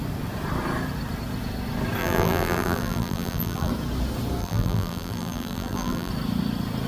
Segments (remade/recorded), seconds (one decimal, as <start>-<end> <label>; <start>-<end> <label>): 0.0-2.0 recorded; 2.0-3.7 remade; 3.7-4.4 recorded; 4.4-6.1 remade; 6.1-6.9 recorded

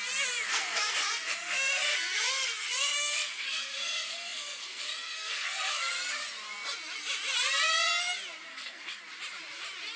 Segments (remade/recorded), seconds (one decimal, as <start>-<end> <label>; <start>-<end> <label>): 0.0-0.5 recorded; 0.5-5.8 remade; 5.8-8.5 recorded; 8.5-9.0 remade; 9.0-10.0 recorded

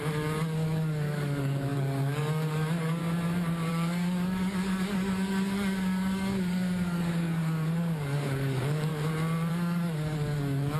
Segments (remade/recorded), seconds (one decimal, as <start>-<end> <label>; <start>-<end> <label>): 0.0-3.0 remade; 3.0-3.7 recorded; 3.7-8.9 remade; 8.9-9.5 recorded; 9.5-10.8 remade

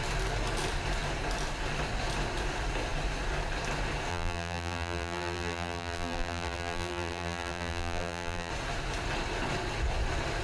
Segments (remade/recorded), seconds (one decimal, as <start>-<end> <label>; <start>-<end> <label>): 0.0-4.1 recorded; 4.1-8.5 remade; 8.5-10.4 recorded

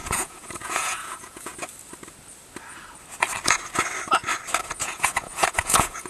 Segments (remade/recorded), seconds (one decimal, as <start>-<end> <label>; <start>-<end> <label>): 0.0-1.5 remade; 1.5-4.6 recorded; 4.6-6.1 remade

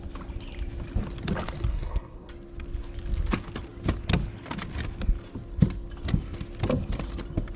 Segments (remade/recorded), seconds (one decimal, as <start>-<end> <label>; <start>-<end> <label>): 0.0-1.7 recorded; 1.7-2.3 remade; 2.3-7.6 recorded